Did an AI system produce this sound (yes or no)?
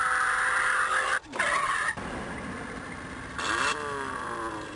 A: no